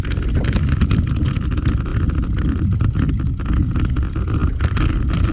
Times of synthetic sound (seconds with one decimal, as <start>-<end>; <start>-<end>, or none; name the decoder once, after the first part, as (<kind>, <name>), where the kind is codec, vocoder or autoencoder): none